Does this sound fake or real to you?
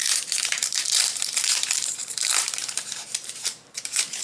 fake